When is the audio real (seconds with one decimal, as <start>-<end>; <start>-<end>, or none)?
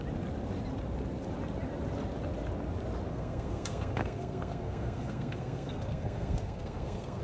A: 0.0-3.1